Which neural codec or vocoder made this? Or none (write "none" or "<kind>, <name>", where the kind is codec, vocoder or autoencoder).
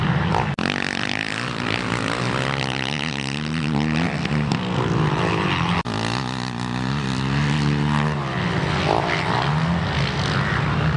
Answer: vocoder, BigVGAN v2